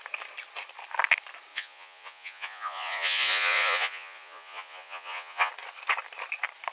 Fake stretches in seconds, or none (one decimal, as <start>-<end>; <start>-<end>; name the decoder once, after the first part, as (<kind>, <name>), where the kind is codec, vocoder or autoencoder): 1.5-5.5 (vocoder, Vocos)